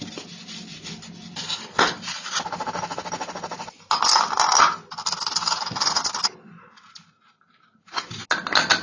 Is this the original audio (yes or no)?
yes